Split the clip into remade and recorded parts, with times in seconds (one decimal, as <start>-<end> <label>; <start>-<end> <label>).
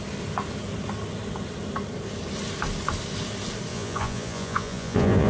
0.0-3.7 recorded; 3.7-5.3 remade